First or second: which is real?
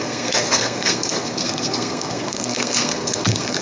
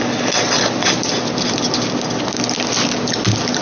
second